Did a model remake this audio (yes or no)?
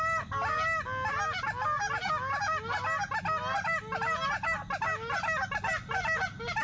no